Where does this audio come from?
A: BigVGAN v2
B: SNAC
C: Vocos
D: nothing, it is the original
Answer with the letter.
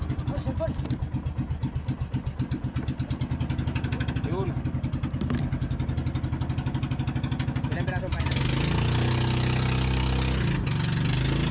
D